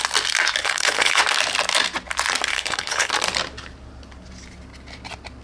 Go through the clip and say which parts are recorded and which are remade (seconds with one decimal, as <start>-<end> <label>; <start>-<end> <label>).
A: 0.0-0.6 recorded; 0.6-1.2 remade; 1.2-2.5 recorded; 2.5-3.1 remade; 3.1-5.4 recorded